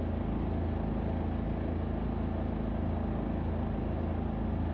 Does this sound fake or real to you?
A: real